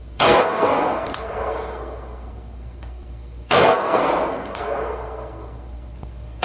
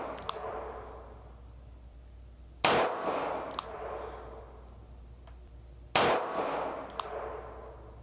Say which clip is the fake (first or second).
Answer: first